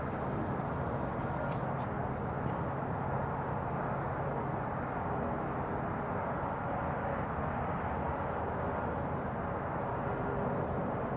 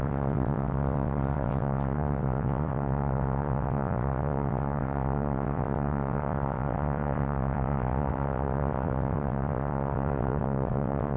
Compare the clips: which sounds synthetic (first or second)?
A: second